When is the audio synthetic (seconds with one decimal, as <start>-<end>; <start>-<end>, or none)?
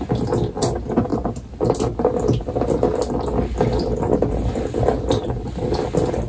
none